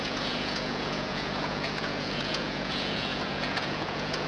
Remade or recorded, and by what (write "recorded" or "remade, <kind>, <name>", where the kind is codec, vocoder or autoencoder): remade, vocoder, Vocos